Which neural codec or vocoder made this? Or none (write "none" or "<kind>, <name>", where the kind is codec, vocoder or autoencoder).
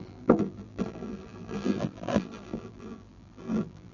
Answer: vocoder, BigVGAN v2